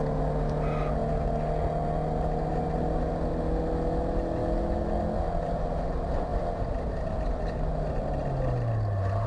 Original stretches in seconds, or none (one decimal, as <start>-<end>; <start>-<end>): 0.0-9.3